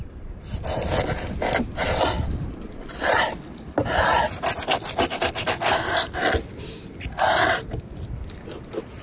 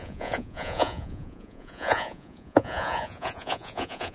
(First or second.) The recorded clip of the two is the first